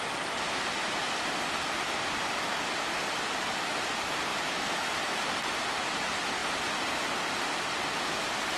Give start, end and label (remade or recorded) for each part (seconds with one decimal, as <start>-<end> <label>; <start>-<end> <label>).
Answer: 0.0-4.3 recorded; 4.3-5.4 remade; 5.4-8.6 recorded